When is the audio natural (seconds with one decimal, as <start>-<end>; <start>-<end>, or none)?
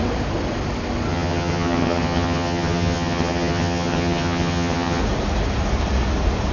0.0-1.1; 5.0-6.5